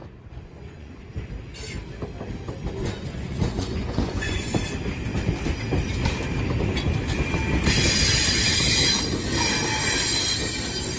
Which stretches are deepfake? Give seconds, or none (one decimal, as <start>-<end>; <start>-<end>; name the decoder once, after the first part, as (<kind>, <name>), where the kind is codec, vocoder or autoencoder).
0.0-1.1 (vocoder, Vocos); 2.8-4.5